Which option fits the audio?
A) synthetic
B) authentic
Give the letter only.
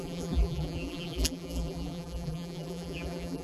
A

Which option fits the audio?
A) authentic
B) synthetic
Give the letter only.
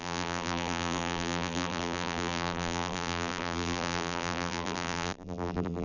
B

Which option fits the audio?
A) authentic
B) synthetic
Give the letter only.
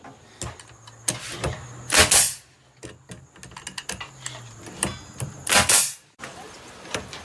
A